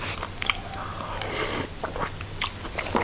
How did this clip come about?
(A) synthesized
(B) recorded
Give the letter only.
B